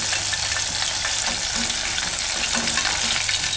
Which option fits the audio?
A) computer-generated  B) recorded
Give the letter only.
B